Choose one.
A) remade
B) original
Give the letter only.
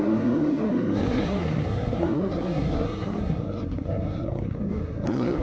A